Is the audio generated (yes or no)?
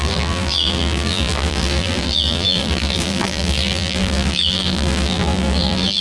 yes